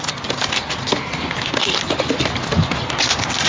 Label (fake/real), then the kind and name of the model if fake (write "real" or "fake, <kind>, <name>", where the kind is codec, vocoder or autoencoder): real